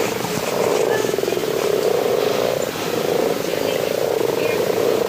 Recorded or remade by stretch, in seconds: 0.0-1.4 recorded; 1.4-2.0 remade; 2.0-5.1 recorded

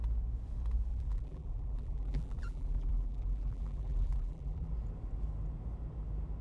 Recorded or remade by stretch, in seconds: 0.0-0.9 recorded; 0.9-4.7 remade; 4.7-6.4 recorded

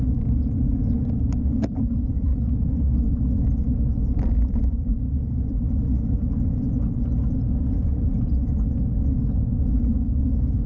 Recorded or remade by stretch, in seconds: 0.0-0.8 remade; 0.8-1.7 recorded; 1.7-2.3 remade; 2.3-4.0 recorded; 4.0-8.4 remade; 8.4-10.7 recorded

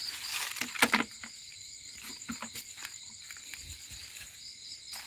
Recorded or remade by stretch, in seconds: 0.0-5.1 recorded